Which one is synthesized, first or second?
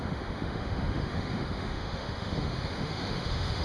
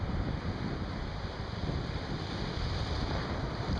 first